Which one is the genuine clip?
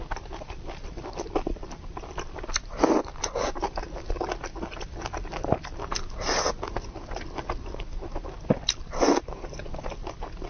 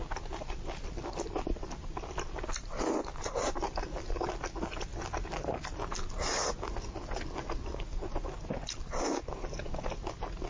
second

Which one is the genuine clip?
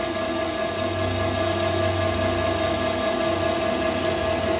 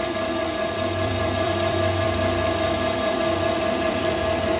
first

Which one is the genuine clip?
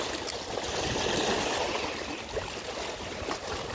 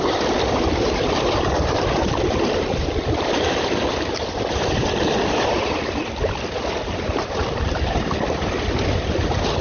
first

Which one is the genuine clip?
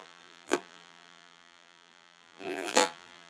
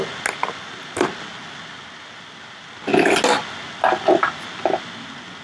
second